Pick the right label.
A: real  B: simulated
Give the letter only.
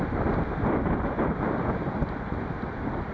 A